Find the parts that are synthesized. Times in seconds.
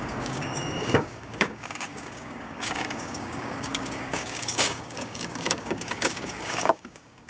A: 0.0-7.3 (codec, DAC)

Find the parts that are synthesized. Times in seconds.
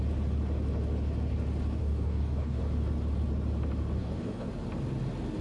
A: 1.8-2.6 (codec, DAC); 4.0-4.5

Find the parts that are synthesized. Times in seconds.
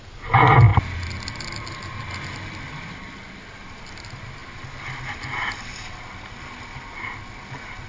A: none